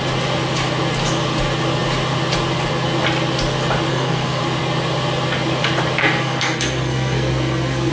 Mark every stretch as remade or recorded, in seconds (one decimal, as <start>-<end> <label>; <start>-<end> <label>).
0.0-3.9 recorded; 3.9-4.4 remade; 4.4-6.0 recorded; 6.0-7.9 remade